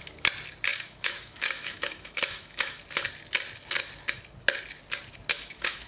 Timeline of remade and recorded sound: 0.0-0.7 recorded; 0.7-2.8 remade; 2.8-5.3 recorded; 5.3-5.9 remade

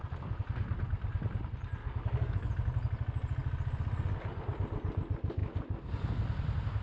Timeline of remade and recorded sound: 0.0-1.8 recorded; 1.8-2.5 remade; 2.5-6.8 recorded

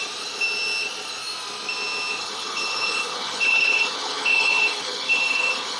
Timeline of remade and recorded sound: 0.0-2.2 recorded; 2.2-5.8 remade

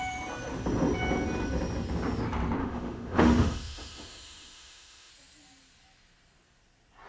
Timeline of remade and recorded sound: 0.0-2.6 recorded; 2.6-5.1 remade; 5.1-7.1 recorded

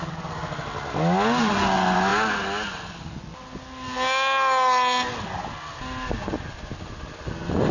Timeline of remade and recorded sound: 0.0-7.7 recorded